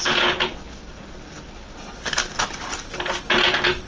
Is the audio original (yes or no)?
yes